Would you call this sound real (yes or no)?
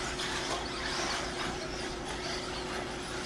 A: yes